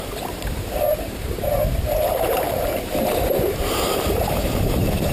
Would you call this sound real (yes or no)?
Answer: no